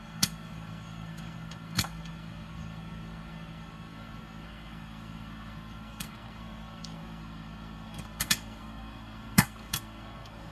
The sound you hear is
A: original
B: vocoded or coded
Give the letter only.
B